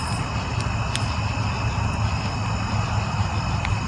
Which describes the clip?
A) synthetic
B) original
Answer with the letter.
B